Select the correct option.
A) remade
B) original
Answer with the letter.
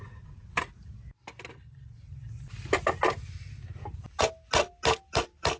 B